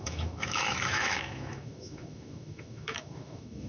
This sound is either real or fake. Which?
fake